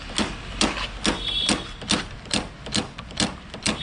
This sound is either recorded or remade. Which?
recorded